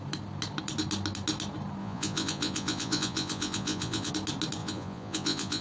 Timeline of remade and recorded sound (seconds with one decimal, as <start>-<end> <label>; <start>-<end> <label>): 0.0-1.8 recorded; 1.8-4.1 remade; 4.1-4.6 recorded; 4.6-5.6 remade